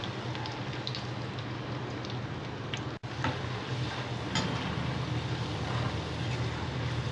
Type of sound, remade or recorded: recorded